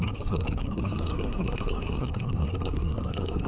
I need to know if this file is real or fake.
fake